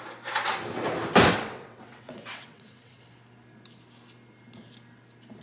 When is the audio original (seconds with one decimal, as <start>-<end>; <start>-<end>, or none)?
0.0-1.3; 3.0-5.4